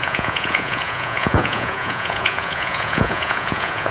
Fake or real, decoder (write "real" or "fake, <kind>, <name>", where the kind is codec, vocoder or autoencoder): fake, vocoder, Vocos